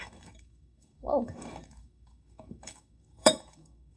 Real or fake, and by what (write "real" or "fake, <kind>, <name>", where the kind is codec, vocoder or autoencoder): fake, autoencoder, DAC-VAE